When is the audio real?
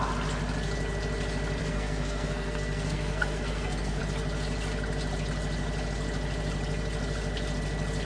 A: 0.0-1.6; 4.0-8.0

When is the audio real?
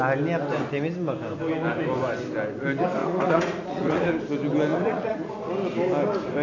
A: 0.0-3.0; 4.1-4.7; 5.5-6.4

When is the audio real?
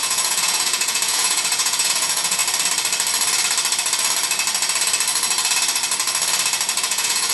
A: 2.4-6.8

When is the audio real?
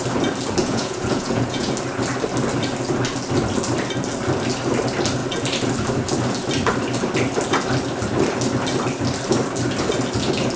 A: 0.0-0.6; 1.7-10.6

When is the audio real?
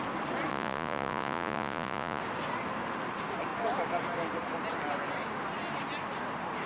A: 0.0-0.5; 2.2-6.7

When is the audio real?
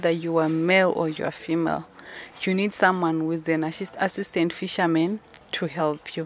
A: 0.0-6.3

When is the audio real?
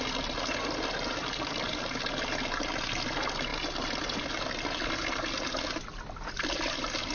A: 0.0-7.1